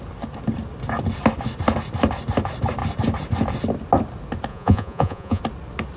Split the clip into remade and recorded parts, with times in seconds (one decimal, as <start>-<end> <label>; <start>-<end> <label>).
0.0-4.5 recorded; 4.5-5.4 remade; 5.4-6.0 recorded